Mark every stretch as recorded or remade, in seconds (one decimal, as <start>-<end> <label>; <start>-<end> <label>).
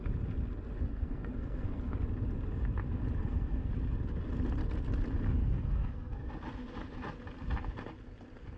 0.0-0.9 recorded; 0.9-1.8 remade; 1.8-3.2 recorded; 3.2-3.7 remade; 3.7-5.4 recorded; 5.4-6.3 remade; 6.3-8.6 recorded